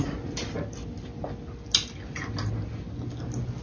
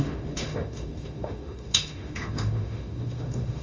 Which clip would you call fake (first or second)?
second